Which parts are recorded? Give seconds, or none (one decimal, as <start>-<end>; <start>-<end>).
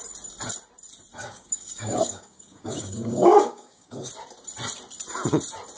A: 0.0-1.2; 4.1-5.8